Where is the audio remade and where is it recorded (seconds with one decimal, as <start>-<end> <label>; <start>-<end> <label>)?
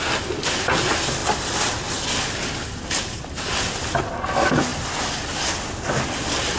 0.0-6.6 recorded